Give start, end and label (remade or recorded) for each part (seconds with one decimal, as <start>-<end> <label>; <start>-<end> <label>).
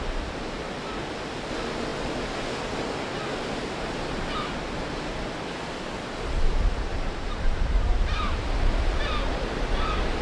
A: 0.0-6.9 recorded; 6.9-9.0 remade; 9.0-10.2 recorded